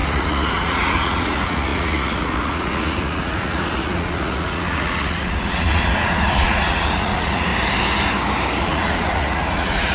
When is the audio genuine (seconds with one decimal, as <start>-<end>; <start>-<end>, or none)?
7.5-8.6